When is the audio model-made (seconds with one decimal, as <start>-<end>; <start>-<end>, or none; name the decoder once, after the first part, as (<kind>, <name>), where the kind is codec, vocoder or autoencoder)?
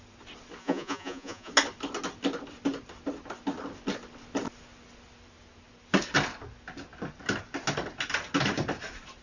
0.6-1.5 (vocoder, Vocos)